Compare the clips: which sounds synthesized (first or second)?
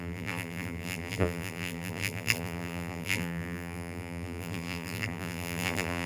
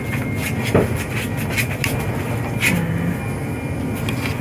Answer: first